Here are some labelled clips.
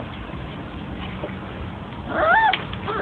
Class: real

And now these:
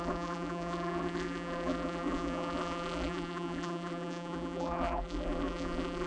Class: fake